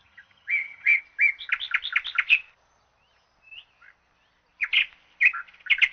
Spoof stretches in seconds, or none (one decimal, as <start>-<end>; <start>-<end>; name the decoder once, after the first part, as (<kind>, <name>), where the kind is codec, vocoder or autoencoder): 0.0-1.0 (vocoder, HiFi-GAN)